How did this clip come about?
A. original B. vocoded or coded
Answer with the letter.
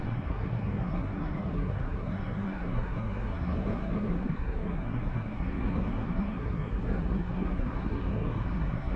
B